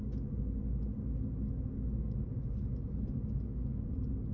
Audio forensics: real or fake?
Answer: real